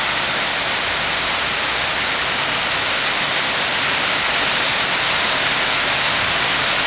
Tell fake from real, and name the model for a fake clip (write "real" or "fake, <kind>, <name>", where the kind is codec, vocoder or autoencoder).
real